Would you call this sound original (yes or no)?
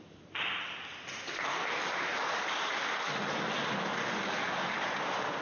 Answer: yes